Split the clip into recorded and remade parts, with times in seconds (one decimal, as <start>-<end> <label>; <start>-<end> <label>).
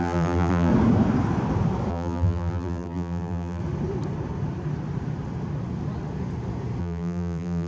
0.0-0.7 remade; 0.7-1.9 recorded; 1.9-3.6 remade; 3.6-6.8 recorded; 6.8-7.7 remade